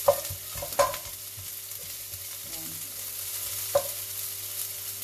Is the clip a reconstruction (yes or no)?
no